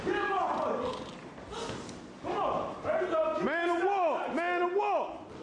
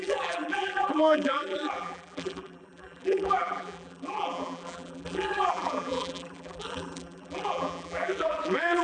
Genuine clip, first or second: first